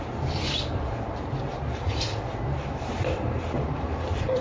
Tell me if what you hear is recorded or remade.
remade